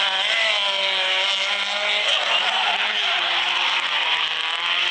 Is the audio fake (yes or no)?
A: no